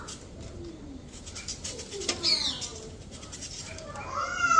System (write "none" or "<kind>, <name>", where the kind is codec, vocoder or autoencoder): none